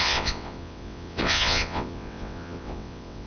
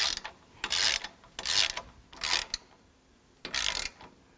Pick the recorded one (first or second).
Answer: second